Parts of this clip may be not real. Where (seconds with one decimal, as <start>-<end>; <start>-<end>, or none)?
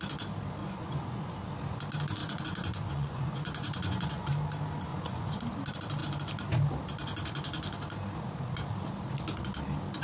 0.6-1.3; 2.2-4.3; 4.9-5.4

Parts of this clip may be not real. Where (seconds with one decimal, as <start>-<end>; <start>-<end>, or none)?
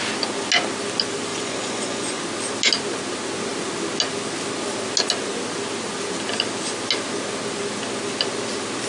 1.3-2.2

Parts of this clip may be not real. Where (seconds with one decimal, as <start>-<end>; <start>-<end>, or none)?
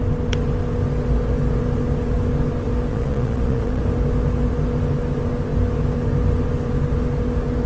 2.9-3.8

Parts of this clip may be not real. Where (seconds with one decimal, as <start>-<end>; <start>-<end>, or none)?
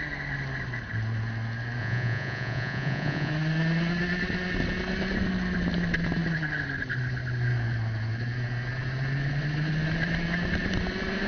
1.8-3.3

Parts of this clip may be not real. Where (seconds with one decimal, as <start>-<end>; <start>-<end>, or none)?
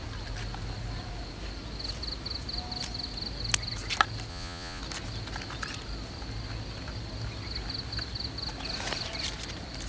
4.3-4.8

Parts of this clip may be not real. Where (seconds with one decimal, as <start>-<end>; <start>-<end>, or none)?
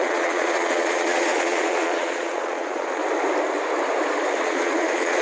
0.0-3.0; 4.4-5.2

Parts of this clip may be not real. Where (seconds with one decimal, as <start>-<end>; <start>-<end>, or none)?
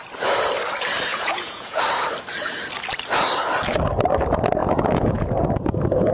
1.1-1.8; 4.6-5.3